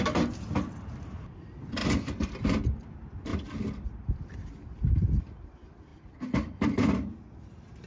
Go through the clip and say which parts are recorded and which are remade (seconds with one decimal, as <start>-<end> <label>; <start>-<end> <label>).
0.0-3.3 recorded; 3.3-5.2 remade; 5.2-5.9 recorded; 5.9-6.7 remade; 6.7-7.9 recorded